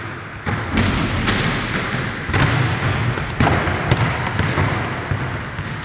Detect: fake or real real